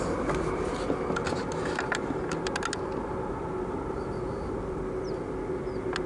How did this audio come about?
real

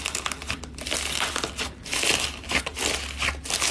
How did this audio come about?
real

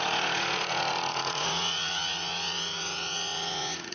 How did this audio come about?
fake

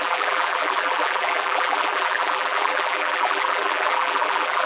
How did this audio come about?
fake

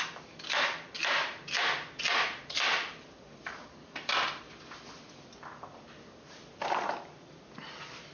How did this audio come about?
fake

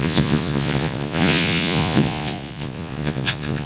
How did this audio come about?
fake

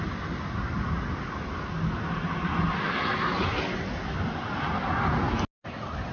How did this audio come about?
real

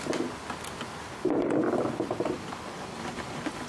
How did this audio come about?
fake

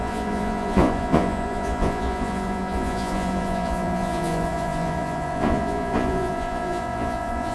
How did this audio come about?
fake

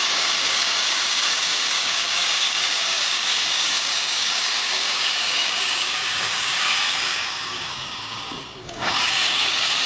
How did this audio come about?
fake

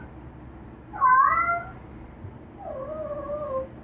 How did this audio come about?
real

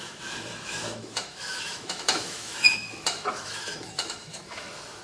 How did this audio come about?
fake